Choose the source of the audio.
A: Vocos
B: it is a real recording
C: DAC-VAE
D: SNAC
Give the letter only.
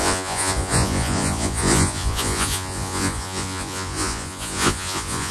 A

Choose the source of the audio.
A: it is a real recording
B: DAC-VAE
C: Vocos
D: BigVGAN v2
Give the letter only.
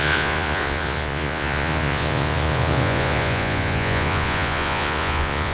C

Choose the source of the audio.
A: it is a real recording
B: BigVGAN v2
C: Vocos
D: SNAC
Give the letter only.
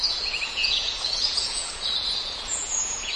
C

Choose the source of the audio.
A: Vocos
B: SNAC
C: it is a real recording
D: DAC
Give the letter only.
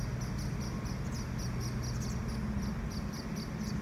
C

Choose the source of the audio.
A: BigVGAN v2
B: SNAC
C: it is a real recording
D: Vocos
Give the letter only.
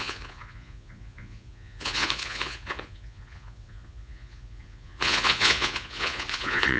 D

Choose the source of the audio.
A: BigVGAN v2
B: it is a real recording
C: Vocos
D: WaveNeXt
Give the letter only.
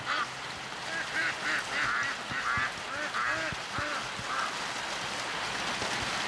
B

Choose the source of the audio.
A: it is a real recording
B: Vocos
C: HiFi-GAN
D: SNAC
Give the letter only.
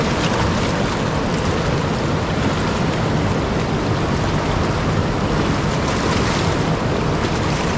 A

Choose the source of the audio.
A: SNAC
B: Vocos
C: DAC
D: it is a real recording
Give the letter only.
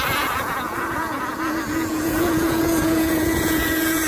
B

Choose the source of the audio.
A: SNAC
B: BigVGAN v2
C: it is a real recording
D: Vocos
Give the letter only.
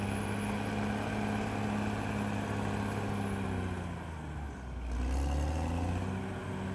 C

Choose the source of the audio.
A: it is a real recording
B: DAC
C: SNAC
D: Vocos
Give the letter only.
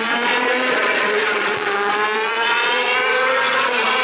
D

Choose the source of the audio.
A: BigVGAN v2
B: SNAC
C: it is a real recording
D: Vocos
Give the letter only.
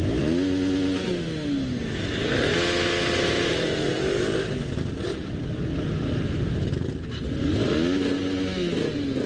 C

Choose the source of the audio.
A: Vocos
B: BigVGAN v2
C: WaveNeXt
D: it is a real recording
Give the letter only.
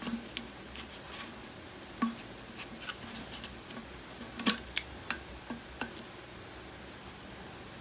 D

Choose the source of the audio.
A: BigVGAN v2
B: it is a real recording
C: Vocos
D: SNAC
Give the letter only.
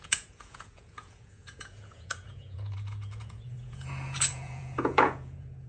C